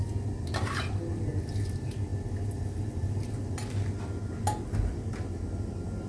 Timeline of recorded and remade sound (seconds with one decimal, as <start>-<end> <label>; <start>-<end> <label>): 0.0-6.1 recorded